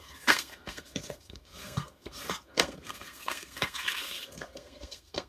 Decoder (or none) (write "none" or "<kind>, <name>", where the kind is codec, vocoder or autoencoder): codec, SNAC